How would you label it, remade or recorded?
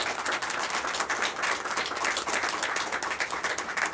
recorded